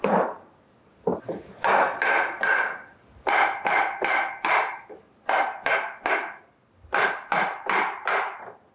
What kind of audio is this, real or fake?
fake